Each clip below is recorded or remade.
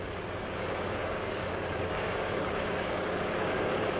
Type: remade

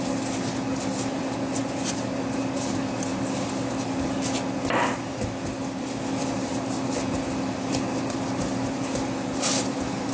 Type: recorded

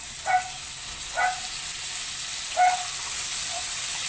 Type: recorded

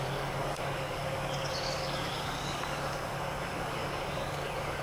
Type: remade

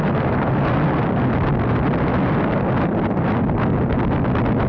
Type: recorded